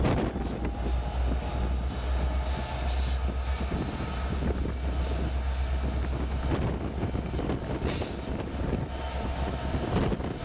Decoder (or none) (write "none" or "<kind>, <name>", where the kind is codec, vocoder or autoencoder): none